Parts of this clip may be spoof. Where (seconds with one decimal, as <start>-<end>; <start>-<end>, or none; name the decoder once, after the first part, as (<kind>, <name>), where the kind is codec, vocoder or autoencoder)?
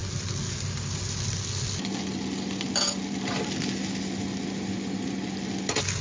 none